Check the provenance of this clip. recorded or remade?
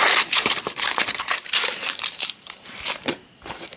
remade